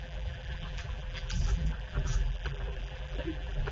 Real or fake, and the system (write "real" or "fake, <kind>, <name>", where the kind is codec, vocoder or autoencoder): fake, vocoder, BigVGAN v2